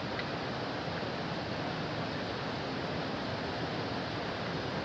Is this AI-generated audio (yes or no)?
no